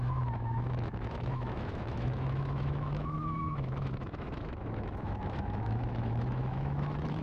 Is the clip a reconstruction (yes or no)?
yes